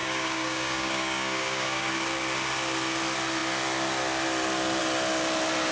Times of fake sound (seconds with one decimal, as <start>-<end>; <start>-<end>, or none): 0.0-1.9